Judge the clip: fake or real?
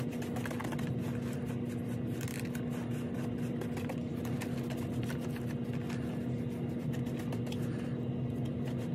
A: real